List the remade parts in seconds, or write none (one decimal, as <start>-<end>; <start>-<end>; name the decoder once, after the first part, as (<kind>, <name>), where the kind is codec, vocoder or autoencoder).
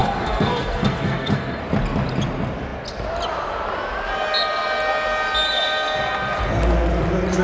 0.0-1.6 (codec, SNAC)